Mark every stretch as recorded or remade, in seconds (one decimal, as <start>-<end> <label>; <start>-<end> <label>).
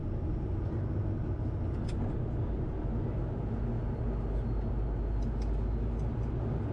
0.0-6.7 recorded